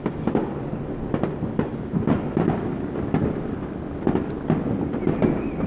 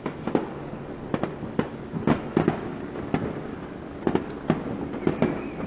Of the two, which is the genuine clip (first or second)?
second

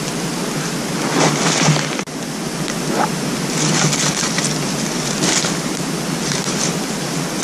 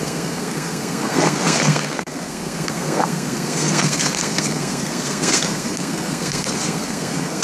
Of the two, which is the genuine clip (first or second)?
first